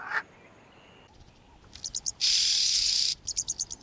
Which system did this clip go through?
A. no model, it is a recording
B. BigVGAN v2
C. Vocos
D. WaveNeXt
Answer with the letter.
A